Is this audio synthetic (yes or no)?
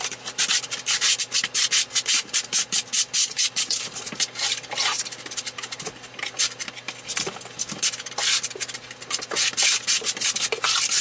no